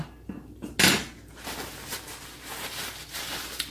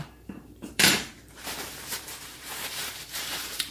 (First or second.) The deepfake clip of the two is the second